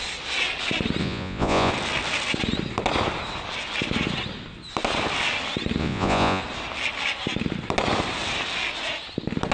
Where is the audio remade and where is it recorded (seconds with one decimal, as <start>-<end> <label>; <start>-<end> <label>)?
0.0-1.0 recorded; 1.0-1.7 remade; 1.7-5.8 recorded; 5.8-6.4 remade; 6.4-9.5 recorded